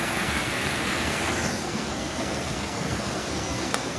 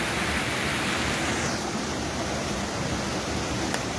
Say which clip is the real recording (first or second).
second